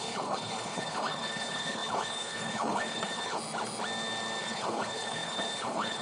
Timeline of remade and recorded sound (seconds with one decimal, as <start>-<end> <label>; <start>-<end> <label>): 0.0-3.4 remade; 3.4-4.4 recorded; 4.4-6.0 remade